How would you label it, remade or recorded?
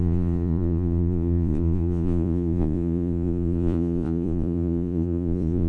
remade